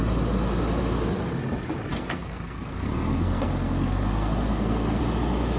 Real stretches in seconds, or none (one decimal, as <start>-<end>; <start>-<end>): 0.0-1.9; 5.0-5.6